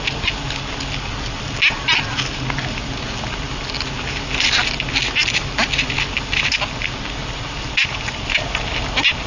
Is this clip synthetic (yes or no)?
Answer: no